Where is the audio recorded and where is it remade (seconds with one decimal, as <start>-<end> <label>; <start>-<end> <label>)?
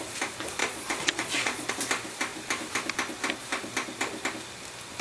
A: 0.0-0.6 recorded; 0.6-1.7 remade; 1.7-5.0 recorded